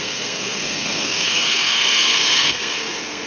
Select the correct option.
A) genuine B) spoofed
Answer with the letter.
B